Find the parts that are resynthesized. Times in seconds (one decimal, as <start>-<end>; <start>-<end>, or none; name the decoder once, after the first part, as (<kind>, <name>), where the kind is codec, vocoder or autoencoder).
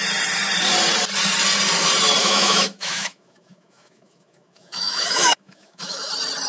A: 2.2-6.1 (autoencoder, DAC-VAE)